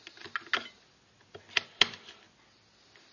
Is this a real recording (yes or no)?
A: yes